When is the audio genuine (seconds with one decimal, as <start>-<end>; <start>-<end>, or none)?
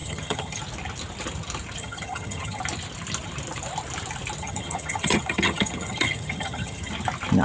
0.6-1.8; 2.6-4.4; 6.9-7.4